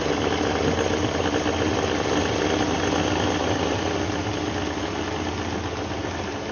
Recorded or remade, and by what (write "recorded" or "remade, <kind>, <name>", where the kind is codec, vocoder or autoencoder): recorded